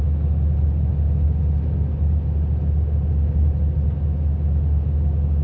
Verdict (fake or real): real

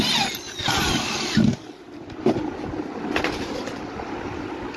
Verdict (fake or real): real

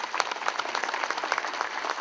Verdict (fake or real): real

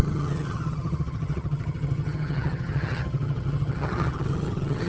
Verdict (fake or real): fake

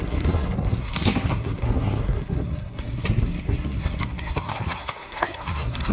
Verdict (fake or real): fake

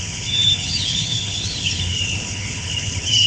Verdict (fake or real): fake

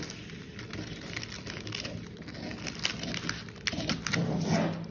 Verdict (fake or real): real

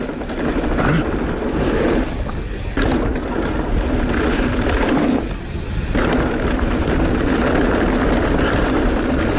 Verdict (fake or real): real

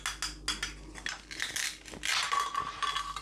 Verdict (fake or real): real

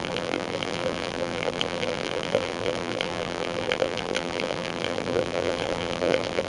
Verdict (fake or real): fake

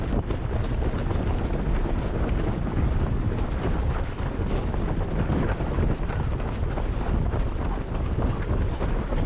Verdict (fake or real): real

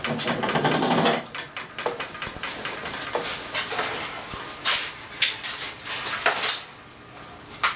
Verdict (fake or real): real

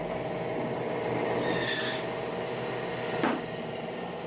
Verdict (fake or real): real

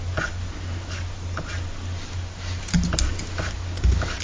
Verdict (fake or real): real